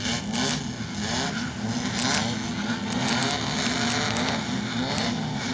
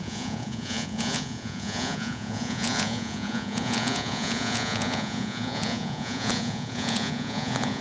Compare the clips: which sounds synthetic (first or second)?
second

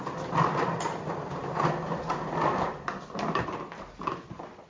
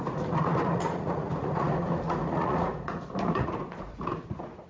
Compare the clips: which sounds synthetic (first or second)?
second